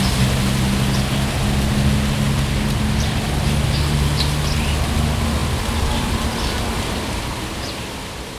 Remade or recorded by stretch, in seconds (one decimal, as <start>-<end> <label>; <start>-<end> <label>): 0.0-5.4 recorded; 5.4-7.2 remade; 7.2-8.4 recorded